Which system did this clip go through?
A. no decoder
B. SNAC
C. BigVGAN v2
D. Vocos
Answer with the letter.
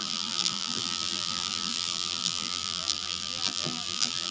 C